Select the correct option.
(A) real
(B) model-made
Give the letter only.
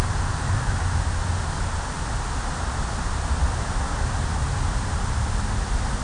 A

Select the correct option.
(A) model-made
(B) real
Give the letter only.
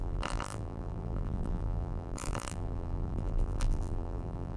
A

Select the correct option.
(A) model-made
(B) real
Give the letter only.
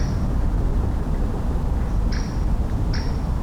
B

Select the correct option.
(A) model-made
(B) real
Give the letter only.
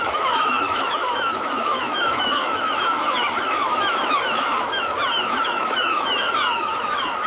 A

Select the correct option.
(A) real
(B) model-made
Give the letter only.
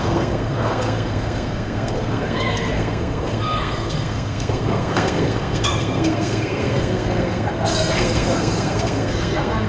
B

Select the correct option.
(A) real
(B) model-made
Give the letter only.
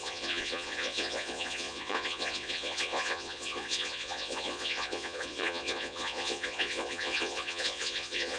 B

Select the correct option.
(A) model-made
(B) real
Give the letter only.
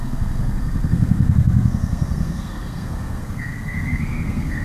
A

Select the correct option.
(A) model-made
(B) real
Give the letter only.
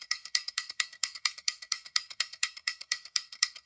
A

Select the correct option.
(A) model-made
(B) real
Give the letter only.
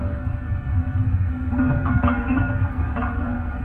A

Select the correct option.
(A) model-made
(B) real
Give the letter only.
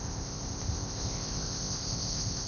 A